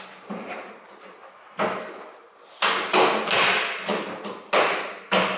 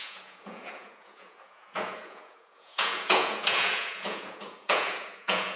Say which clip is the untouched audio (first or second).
first